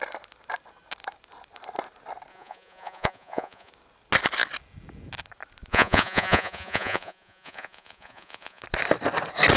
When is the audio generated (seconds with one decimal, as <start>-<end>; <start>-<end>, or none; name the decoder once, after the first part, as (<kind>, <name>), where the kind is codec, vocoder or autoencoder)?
2.3-3.7 (vocoder, Vocos); 5.7-8.6